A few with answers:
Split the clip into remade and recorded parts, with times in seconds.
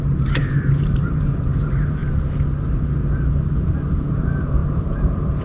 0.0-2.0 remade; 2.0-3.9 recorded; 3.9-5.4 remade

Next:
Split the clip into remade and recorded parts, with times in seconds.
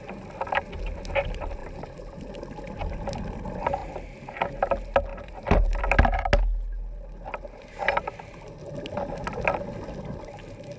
0.0-1.6 recorded; 1.6-2.2 remade; 2.2-5.1 recorded; 5.1-5.8 remade; 5.8-10.8 recorded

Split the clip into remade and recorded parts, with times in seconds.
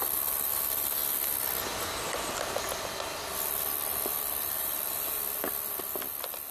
0.0-3.9 recorded; 3.9-4.9 remade; 4.9-6.5 recorded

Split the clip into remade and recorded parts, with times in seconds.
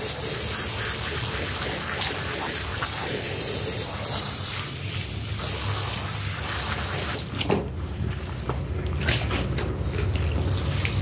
0.0-2.7 recorded; 2.7-5.4 remade; 5.4-11.0 recorded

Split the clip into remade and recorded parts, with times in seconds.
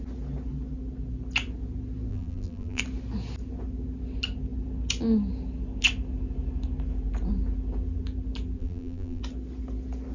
0.0-2.1 recorded; 2.1-2.8 remade; 2.8-8.6 recorded; 8.6-9.2 remade; 9.2-10.1 recorded